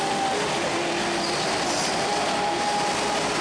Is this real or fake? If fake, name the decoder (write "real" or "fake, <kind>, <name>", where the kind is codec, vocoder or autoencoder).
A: real